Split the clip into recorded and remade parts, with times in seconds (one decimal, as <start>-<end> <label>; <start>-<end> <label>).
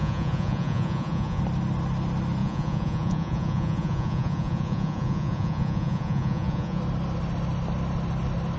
0.0-1.4 remade; 1.4-2.4 recorded; 2.4-6.8 remade; 6.8-8.6 recorded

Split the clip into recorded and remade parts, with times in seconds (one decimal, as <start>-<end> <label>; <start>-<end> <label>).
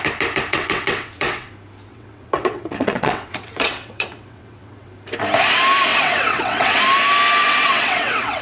0.0-0.5 recorded; 0.5-1.5 remade; 1.5-1.9 recorded; 1.9-4.9 remade; 4.9-5.9 recorded; 5.9-6.8 remade; 6.8-7.4 recorded; 7.4-8.4 remade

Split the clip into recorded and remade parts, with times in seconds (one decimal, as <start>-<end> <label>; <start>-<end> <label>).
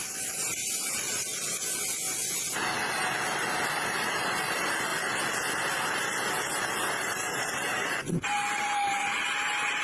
0.0-1.3 remade; 1.3-4.1 recorded; 4.1-4.9 remade; 4.9-6.3 recorded; 6.3-9.8 remade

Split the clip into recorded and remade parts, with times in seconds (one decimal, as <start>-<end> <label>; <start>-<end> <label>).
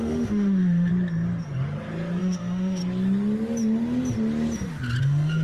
0.0-0.9 remade; 0.9-2.2 recorded; 2.2-2.8 remade; 2.8-5.0 recorded; 5.0-5.4 remade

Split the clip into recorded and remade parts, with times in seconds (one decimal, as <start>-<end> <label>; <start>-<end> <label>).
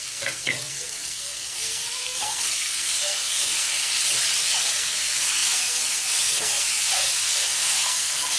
0.0-3.9 remade; 3.9-4.4 recorded; 4.4-8.4 remade